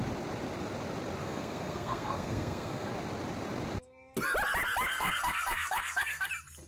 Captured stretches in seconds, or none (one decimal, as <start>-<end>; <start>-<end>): 0.0-1.2; 2.9-4.9; 6.3-6.7